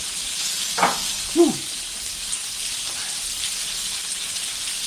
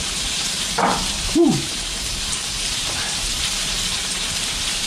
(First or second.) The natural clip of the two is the first